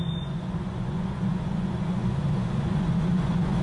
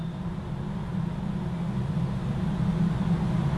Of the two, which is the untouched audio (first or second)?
second